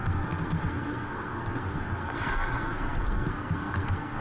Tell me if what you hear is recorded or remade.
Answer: remade